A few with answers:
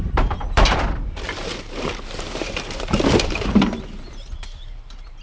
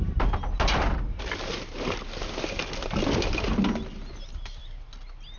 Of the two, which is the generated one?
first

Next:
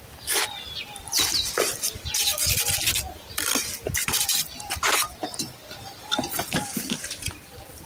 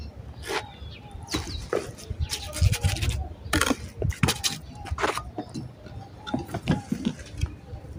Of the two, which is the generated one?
first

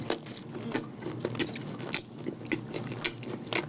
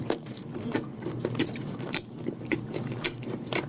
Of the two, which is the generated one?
second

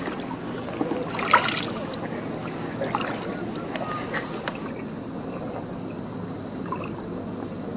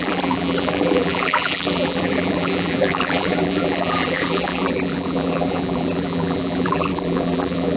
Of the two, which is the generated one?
second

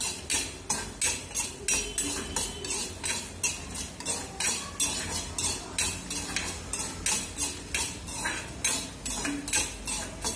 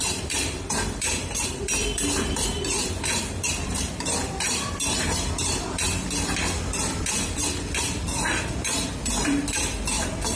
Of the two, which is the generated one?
second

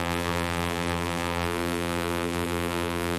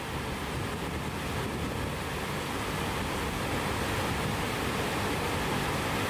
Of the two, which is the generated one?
first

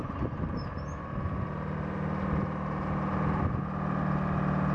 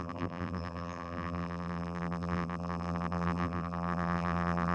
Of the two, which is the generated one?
second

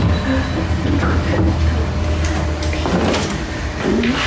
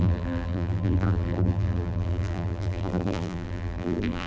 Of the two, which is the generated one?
second